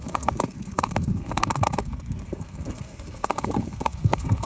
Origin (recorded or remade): remade